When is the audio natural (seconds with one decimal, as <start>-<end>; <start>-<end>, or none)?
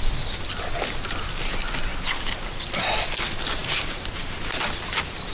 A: 0.0-5.3